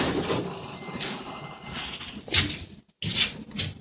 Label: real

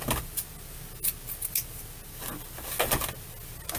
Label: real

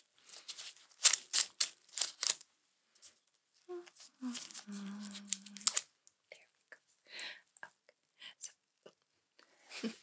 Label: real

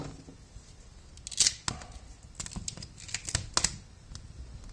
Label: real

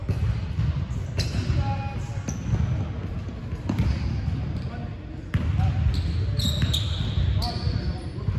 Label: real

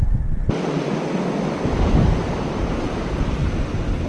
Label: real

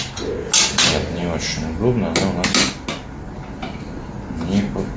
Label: real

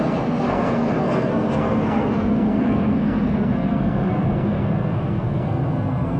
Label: fake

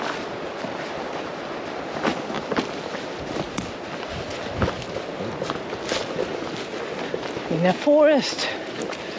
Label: real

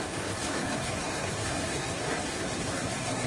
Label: fake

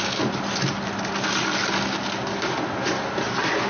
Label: real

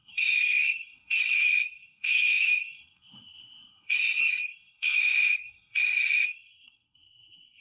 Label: fake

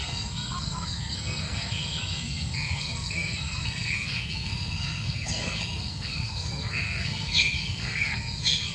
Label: fake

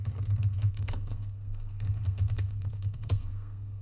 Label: fake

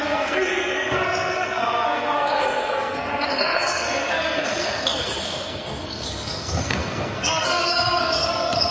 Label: fake